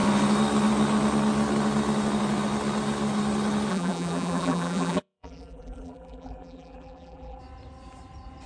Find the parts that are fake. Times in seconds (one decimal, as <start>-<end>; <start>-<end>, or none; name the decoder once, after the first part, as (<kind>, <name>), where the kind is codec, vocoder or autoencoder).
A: 3.7-7.4 (vocoder, BigVGAN v2)